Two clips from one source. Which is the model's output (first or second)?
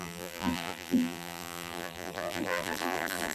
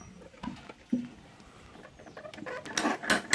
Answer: first